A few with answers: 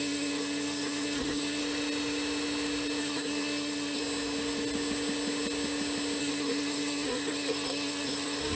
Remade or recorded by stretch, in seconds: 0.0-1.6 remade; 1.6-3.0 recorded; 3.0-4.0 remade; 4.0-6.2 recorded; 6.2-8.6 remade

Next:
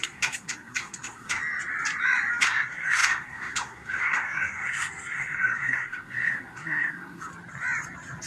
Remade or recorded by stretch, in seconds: 0.0-1.4 remade; 1.4-2.4 recorded; 2.4-7.3 remade; 7.3-8.3 recorded

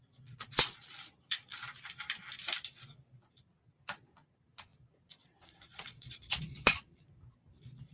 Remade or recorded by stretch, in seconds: 0.0-1.5 remade; 1.5-3.3 recorded; 3.3-7.9 remade

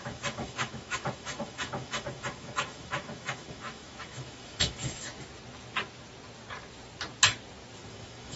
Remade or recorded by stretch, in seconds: 0.0-5.1 remade; 5.1-7.8 recorded; 7.8-8.4 remade

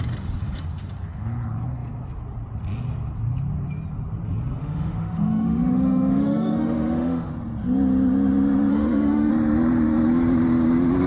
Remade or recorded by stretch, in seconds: 0.0-4.6 recorded; 4.6-7.3 remade; 7.3-8.7 recorded; 8.7-9.3 remade; 9.3-11.1 recorded

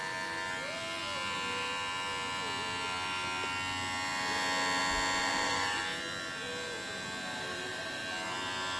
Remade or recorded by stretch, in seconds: 0.0-5.2 recorded; 5.2-5.8 remade; 5.8-7.3 recorded; 7.3-8.0 remade; 8.0-8.8 recorded

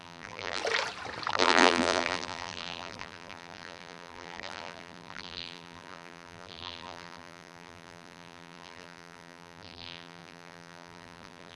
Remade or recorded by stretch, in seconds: 0.0-0.6 remade; 0.6-1.3 recorded; 1.3-11.6 remade